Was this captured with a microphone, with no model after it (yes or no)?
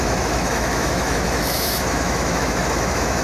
no